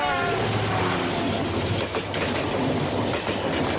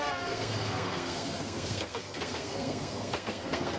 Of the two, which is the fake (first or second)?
second